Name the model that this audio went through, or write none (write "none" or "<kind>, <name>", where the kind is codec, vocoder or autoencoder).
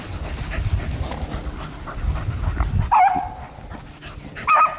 none